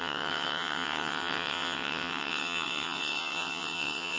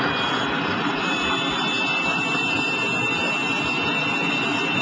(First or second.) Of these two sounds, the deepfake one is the first